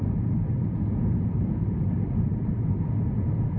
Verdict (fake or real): fake